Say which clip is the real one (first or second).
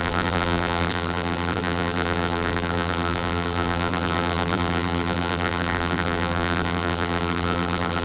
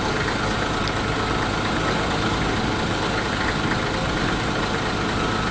second